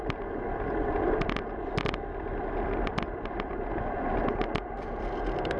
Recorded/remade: recorded